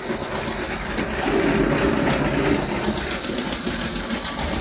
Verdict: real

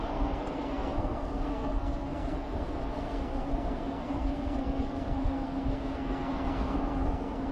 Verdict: fake